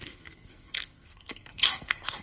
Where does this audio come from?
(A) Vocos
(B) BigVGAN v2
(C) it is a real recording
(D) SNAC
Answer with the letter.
D